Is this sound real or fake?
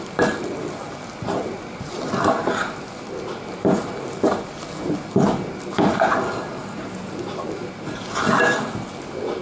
real